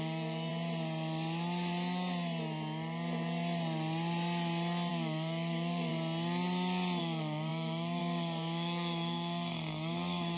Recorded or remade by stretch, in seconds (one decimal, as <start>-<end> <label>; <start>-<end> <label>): 0.0-0.5 remade; 0.5-4.9 recorded; 4.9-5.9 remade; 5.9-7.0 recorded; 7.0-10.4 remade